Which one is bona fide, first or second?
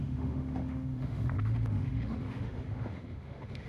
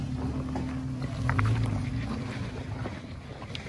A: second